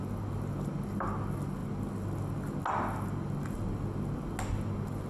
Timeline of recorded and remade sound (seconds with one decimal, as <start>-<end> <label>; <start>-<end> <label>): 0.0-5.1 recorded